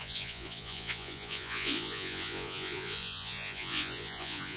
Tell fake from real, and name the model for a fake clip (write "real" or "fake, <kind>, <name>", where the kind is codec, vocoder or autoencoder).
fake, vocoder, Vocos